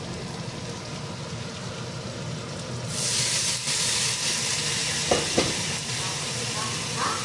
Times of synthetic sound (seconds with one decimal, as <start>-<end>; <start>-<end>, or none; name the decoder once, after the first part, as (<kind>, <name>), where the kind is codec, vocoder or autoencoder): none